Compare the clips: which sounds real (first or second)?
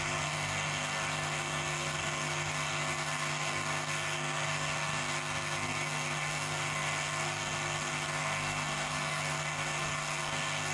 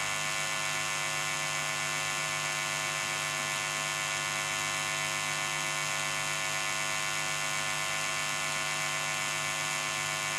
second